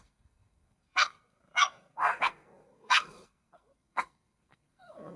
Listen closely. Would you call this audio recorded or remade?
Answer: remade